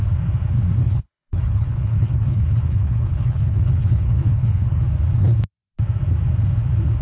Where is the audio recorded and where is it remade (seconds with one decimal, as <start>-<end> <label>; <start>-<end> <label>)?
0.0-0.8 recorded; 0.8-4.8 remade; 4.8-7.0 recorded